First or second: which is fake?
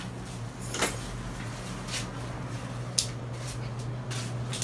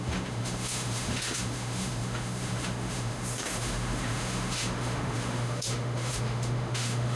second